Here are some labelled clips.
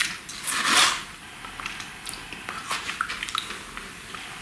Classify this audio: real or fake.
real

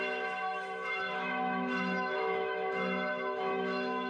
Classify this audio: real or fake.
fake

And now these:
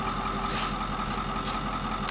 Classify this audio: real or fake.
real